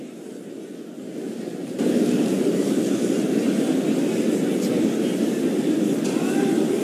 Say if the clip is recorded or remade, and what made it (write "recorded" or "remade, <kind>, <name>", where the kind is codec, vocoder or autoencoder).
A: recorded